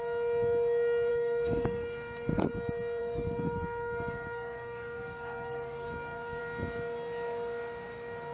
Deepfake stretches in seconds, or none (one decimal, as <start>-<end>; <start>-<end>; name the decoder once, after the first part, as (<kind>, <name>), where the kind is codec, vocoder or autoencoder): 1.1-2.5 (codec, DAC); 3.0-6.4